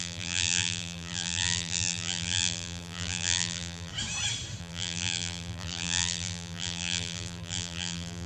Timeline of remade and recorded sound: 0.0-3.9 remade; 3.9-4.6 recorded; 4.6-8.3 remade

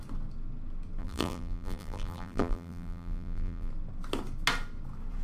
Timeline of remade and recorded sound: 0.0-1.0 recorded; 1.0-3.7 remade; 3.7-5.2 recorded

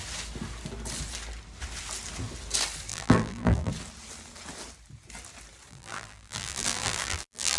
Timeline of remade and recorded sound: 0.0-2.9 recorded; 2.9-3.7 remade; 3.7-5.7 recorded; 5.7-7.6 remade

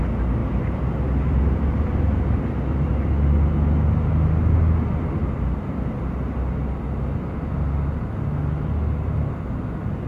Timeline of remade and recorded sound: 0.0-0.4 recorded; 0.4-2.9 remade; 2.9-10.1 recorded

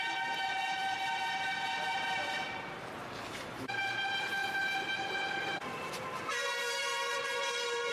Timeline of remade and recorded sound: 0.0-0.8 remade; 0.8-3.3 recorded; 3.3-4.4 remade; 4.4-5.3 recorded; 5.3-7.9 remade

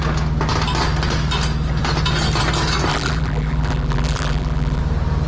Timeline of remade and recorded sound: 0.0-2.9 recorded; 2.9-4.8 remade; 4.8-5.3 recorded

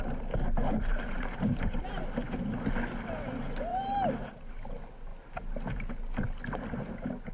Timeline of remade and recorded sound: 0.0-0.9 recorded; 0.9-1.9 remade; 1.9-3.7 recorded; 3.7-4.4 remade; 4.4-7.3 recorded

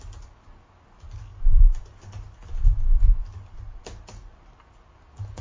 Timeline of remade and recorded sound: 0.0-5.4 recorded